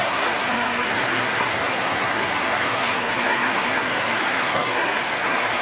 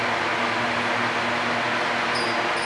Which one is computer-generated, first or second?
first